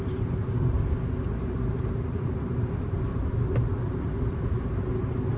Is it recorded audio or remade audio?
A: recorded